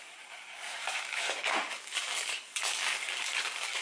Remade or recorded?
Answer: remade